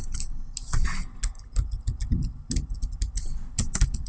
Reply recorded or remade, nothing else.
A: recorded